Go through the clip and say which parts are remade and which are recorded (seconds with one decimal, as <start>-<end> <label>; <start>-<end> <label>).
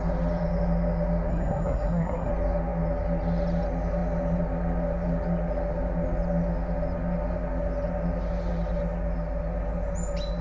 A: 0.0-1.3 recorded; 1.3-2.3 remade; 2.3-10.4 recorded